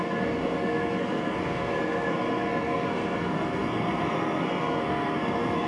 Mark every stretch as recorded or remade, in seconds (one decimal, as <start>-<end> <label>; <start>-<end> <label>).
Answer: 0.0-5.7 remade